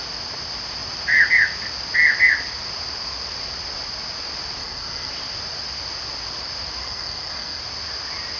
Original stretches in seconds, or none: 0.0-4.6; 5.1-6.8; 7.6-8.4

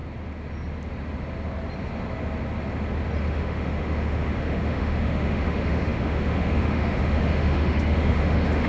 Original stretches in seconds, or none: 0.0-3.2

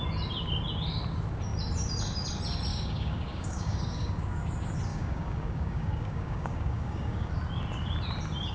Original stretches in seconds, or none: 0.0-2.7; 4.4-4.9; 7.3-8.5

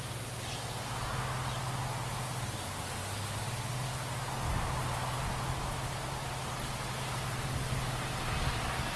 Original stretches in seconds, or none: 0.0-9.0

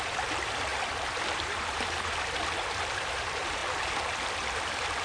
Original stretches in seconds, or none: 3.6-4.3

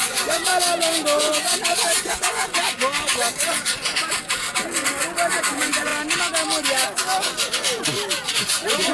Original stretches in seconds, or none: 0.5-1.2; 2.4-5.4; 5.9-8.3

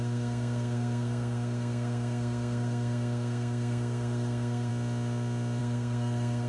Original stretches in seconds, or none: 4.7-5.6

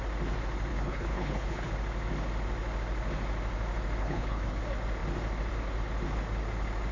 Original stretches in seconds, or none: 0.0-0.7; 1.7-4.0; 4.6-6.9